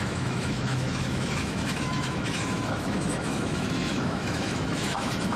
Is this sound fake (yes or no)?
yes